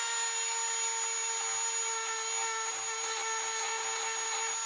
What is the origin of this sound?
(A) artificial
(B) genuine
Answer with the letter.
B